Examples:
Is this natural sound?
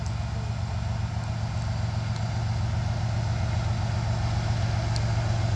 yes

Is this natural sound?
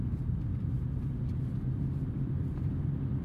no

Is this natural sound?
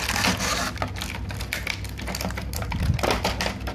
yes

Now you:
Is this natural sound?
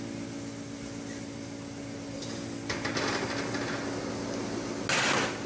yes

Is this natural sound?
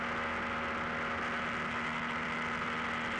yes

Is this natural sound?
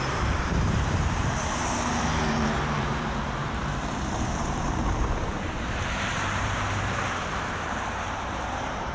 no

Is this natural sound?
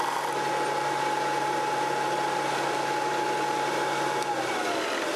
yes